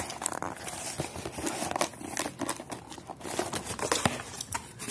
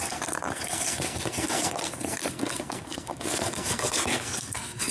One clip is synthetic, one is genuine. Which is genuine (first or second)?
first